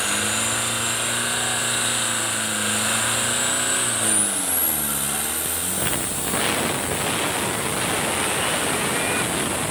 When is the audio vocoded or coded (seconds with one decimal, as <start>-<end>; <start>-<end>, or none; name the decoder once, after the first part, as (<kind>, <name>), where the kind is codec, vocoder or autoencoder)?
none